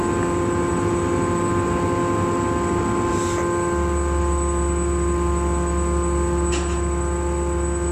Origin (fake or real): real